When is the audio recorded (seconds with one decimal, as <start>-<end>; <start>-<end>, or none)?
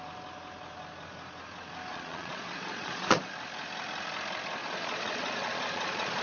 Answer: 0.0-1.9; 3.3-4.6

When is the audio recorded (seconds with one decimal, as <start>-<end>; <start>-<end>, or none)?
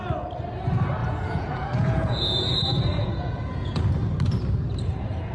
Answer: 0.0-1.0; 3.8-5.3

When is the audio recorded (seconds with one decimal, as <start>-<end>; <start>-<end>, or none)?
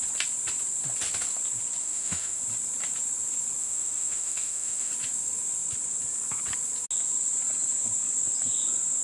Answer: 0.0-1.8; 2.4-3.6; 4.9-9.0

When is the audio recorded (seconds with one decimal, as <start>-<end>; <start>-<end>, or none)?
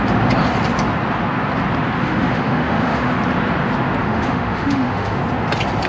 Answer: 0.0-2.0; 3.1-4.0; 5.2-5.9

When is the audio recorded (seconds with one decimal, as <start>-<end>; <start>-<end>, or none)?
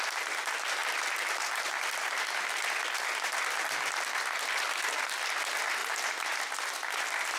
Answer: 0.0-7.4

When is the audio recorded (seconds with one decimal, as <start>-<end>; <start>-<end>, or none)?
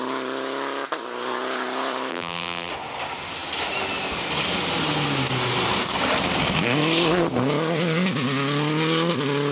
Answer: 0.0-2.1; 2.7-9.5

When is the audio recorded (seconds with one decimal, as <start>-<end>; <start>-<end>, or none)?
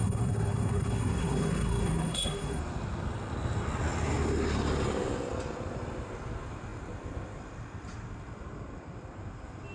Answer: 2.6-9.7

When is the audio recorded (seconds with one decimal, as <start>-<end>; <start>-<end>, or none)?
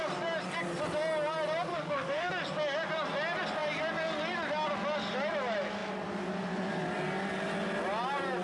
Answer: 0.0-1.7; 2.3-8.4